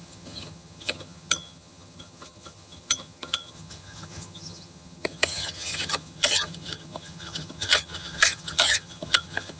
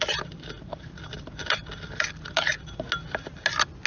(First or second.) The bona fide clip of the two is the second